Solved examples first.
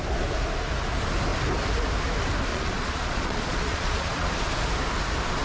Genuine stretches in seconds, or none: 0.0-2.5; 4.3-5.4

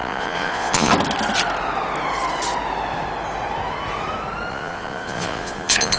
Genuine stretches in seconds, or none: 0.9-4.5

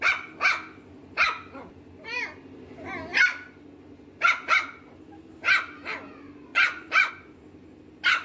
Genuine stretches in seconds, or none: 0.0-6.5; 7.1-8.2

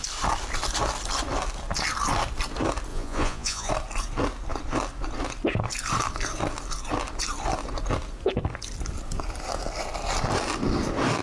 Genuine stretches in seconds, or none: 0.0-2.9; 3.7-11.2

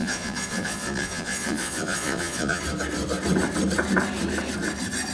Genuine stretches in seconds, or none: 2.6-5.1